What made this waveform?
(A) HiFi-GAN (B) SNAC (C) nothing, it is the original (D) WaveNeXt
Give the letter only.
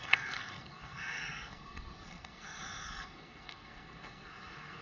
B